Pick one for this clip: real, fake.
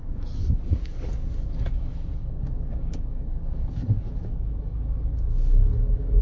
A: fake